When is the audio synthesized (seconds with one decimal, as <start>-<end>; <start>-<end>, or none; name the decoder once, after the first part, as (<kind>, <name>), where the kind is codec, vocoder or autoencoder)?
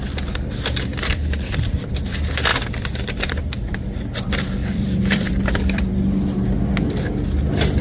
0.9-1.9 (vocoder, BigVGAN v2); 2.5-3.7; 4.6-5.9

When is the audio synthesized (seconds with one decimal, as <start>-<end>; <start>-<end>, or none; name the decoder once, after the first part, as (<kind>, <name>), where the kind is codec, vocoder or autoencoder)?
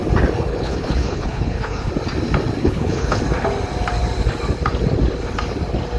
0.5-1.9 (codec, HILCodec); 2.6-3.2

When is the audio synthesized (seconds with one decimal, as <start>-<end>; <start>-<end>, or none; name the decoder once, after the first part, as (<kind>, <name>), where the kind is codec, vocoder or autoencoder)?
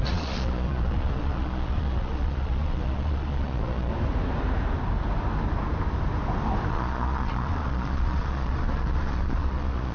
0.0-3.9 (vocoder, Vocos); 6.7-9.9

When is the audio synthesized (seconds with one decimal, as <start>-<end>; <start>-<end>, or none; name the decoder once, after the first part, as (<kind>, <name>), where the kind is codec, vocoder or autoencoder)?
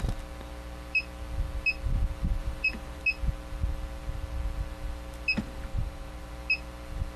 2.4-3.0 (vocoder, BigVGAN v2); 5.7-6.3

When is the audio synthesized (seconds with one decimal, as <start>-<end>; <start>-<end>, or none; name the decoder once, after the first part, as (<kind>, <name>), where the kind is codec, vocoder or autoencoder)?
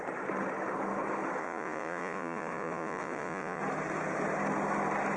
1.4-3.6 (vocoder, Vocos)